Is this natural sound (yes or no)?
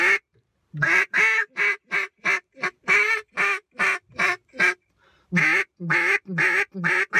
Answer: yes